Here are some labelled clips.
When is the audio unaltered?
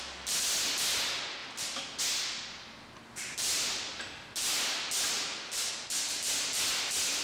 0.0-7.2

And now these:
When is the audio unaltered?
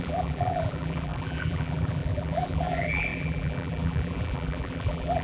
none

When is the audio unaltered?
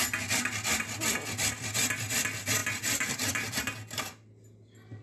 0.0-2.6; 3.6-5.0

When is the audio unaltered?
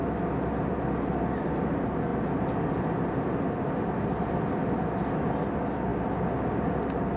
0.0-7.2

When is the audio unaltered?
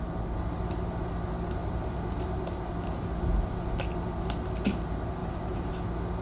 0.0-1.6; 2.7-5.2; 5.7-6.2